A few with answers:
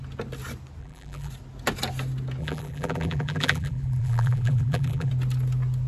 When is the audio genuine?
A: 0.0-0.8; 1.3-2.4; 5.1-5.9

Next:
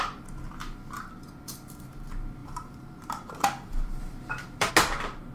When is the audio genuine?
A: 0.0-2.4; 4.7-5.3